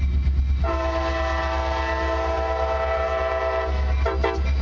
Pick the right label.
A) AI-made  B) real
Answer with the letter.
B